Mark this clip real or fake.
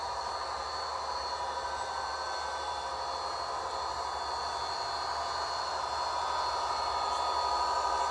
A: real